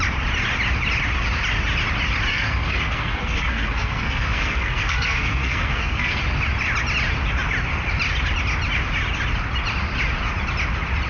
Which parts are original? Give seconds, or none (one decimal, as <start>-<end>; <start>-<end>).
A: 0.0-2.3; 6.2-11.1